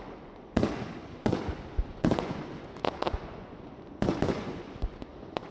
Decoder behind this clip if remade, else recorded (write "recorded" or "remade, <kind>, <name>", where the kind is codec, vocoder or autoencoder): remade, vocoder, Vocos